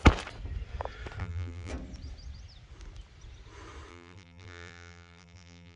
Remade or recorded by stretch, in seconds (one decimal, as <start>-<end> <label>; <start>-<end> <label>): 0.0-1.2 recorded; 1.2-1.7 remade; 1.7-3.9 recorded; 3.9-5.8 remade